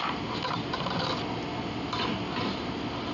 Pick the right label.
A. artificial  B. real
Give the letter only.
B